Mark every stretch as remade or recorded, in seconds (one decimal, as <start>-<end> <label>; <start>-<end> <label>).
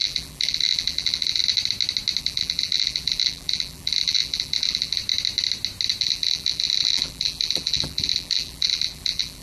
0.0-1.4 remade; 1.4-2.2 recorded; 2.2-5.0 remade; 5.0-6.0 recorded; 6.0-9.4 remade